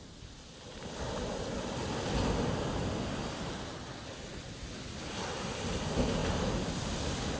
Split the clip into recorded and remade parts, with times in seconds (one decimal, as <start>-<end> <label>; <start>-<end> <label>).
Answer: 0.0-7.4 recorded